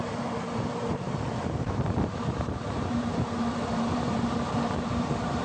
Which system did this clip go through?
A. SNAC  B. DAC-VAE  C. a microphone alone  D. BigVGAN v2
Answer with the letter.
D